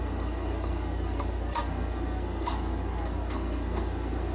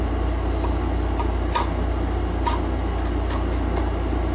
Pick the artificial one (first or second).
first